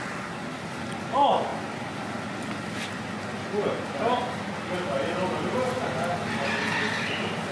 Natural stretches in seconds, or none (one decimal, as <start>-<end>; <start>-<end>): 0.0-7.5